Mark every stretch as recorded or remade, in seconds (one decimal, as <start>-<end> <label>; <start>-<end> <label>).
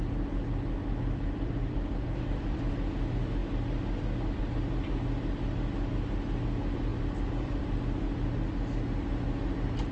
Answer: 0.0-0.8 recorded; 0.8-2.7 remade; 2.7-6.9 recorded; 6.9-7.8 remade; 7.8-9.9 recorded